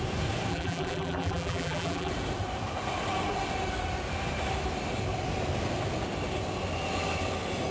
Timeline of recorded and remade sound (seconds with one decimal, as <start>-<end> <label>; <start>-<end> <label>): 0.0-0.5 recorded; 0.5-2.1 remade; 2.1-7.7 recorded